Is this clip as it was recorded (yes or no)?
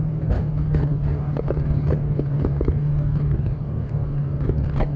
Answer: no